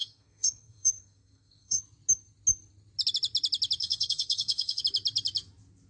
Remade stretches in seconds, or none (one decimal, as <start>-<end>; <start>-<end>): 0.0-1.8; 3.8-4.8